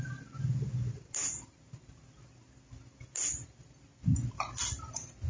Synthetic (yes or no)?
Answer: no